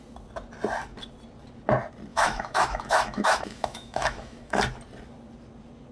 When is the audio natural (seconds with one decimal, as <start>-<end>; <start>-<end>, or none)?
0.0-2.1; 4.6-5.9